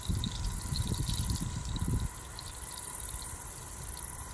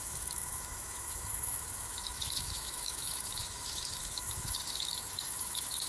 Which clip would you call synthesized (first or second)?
second